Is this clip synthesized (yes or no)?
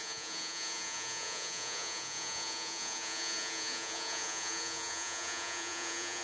yes